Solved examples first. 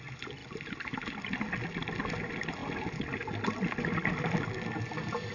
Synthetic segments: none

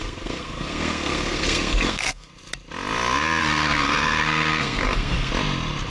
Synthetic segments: 0.0-2.3 (codec, SNAC); 3.4-5.3

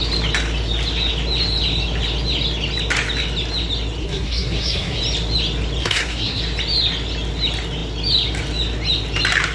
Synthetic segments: 4.0-5.0 (codec, SNAC); 5.8-6.4